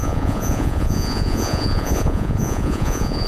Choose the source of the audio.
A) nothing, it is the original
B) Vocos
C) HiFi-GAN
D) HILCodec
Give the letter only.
B